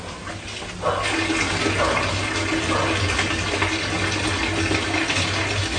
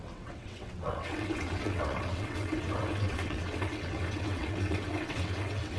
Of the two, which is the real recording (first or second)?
first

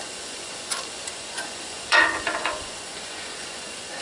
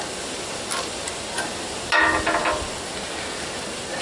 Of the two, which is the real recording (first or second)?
second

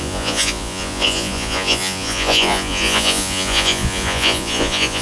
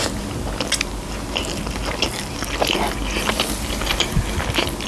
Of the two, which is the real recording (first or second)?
second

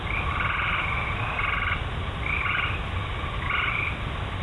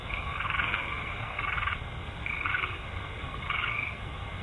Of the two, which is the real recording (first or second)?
first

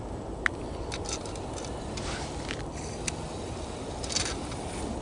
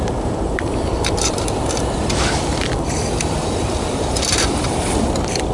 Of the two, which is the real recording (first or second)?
first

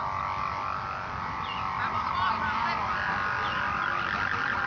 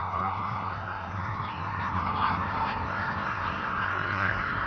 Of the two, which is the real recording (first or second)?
first